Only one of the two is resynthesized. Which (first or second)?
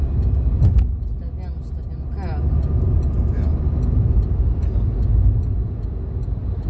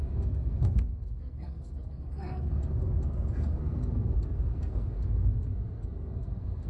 second